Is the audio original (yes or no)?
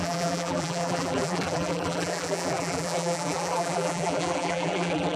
no